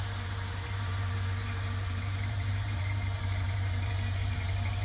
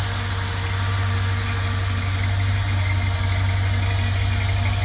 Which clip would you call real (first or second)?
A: second